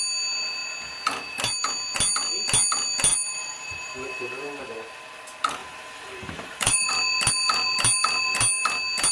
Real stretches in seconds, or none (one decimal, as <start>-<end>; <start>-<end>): 0.0-3.1; 4.6-5.6; 6.9-9.1